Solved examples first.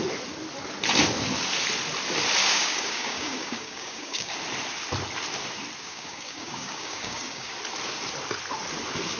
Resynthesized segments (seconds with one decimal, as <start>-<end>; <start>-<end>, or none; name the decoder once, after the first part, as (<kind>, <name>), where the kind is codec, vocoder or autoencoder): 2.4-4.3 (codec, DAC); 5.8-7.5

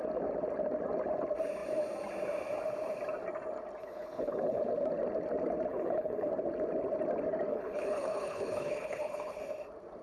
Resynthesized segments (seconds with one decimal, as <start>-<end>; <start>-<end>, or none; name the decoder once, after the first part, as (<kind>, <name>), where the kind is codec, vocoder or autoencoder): 3.8-4.6 (codec, HILCodec); 5.7-6.3; 7.5-9.4

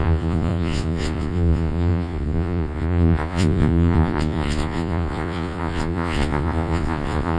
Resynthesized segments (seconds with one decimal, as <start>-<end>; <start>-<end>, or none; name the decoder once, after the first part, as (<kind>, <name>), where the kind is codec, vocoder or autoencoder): 0.0-7.4 (vocoder, Vocos)

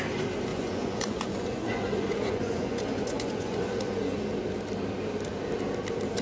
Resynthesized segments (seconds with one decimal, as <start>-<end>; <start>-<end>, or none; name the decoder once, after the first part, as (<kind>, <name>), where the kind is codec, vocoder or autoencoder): 0.5-4.2 (vocoder, Vocos)

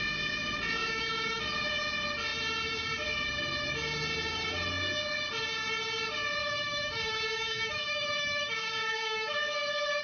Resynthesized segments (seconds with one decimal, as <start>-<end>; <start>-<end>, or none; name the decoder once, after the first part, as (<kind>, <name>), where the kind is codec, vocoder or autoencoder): 0.8-1.4 (autoencoder, DAC-VAE); 6.4-10.0

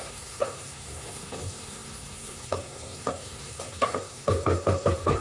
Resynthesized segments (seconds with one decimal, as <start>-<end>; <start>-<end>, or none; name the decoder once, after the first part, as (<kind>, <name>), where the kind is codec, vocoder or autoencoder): 0.0-5.2 (codec, SNAC)

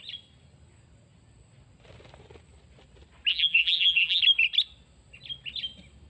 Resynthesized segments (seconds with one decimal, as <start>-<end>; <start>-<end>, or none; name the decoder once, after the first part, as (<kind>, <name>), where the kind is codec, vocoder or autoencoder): 3.3-4.2 (vocoder, BigVGAN v2)

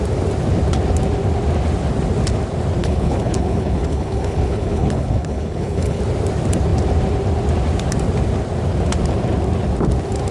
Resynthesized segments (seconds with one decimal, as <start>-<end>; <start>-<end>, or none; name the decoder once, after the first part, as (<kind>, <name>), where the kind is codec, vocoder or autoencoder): 2.8-6.0 (codec, HILCodec)